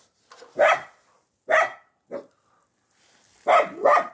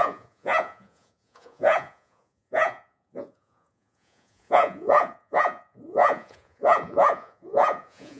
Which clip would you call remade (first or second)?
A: second